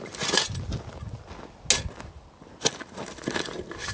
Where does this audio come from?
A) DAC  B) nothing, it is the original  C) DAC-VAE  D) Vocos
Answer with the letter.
B